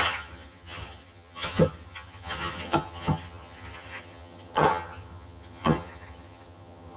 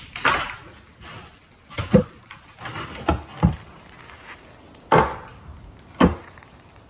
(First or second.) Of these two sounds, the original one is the second